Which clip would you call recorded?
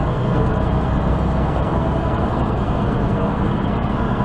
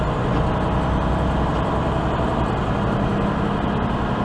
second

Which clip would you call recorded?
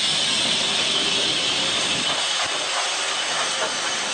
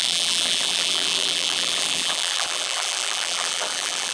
first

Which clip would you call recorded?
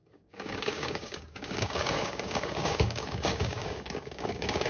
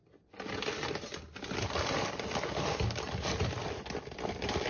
second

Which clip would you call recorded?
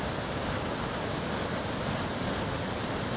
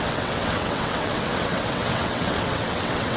first